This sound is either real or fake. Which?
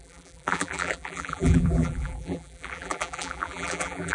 fake